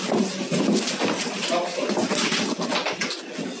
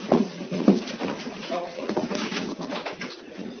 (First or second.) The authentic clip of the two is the first